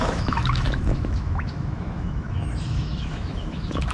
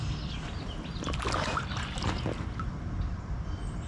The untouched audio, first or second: second